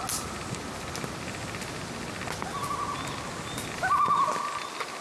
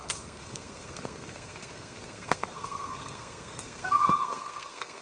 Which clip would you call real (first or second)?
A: first